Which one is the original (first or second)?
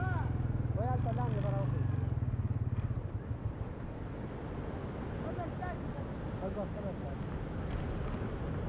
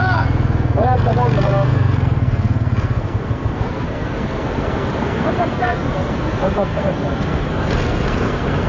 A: first